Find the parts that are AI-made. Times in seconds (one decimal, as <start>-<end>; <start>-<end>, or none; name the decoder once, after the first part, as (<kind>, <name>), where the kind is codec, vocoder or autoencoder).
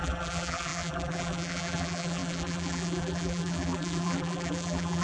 0.0-5.0 (vocoder, BigVGAN v2)